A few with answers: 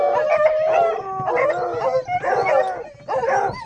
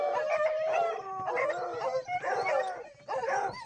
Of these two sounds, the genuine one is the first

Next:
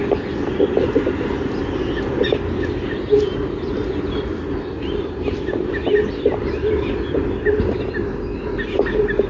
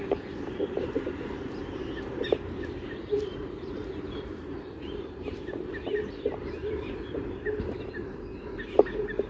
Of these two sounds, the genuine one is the first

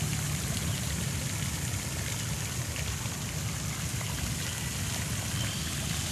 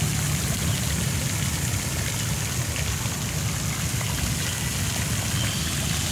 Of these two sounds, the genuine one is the second